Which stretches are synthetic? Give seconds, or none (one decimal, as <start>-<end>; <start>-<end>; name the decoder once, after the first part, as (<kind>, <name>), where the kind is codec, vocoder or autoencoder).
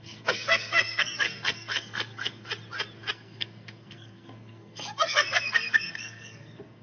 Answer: 0.0-2.5 (codec, SNAC); 3.1-6.8